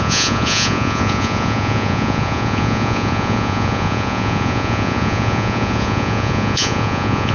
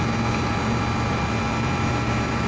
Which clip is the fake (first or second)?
first